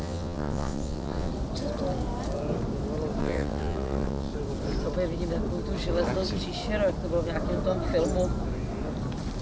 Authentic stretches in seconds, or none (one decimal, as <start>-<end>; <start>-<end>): 1.3-3.2; 4.3-9.4